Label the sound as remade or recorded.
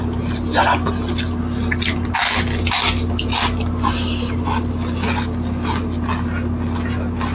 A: recorded